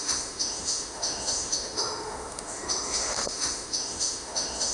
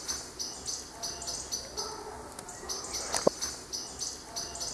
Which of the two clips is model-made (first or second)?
first